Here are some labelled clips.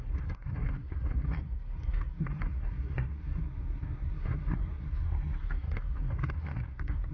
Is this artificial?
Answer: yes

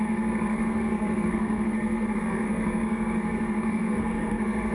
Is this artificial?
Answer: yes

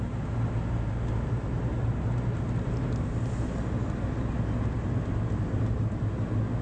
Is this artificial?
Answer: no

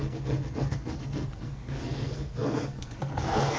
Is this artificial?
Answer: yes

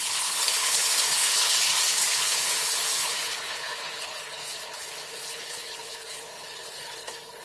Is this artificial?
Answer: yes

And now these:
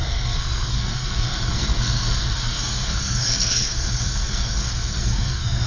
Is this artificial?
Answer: yes